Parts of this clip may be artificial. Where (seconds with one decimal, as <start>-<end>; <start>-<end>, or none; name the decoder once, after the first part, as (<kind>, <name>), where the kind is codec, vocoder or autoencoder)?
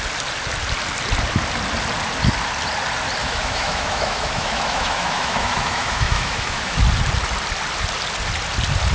3.2-6.8 (autoencoder, DAC-VAE)